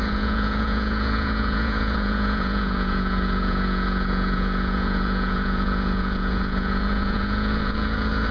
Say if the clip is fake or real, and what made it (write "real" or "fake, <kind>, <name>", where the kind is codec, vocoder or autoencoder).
fake, vocoder, Vocos